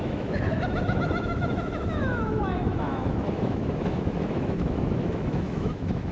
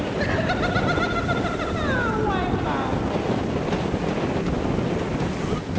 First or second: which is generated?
first